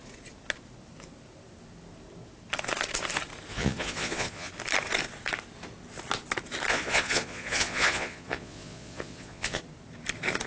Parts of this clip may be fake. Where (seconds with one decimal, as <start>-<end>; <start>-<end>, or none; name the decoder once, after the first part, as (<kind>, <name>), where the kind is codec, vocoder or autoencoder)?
3.5-4.5 (vocoder, Vocos); 6.7-9.6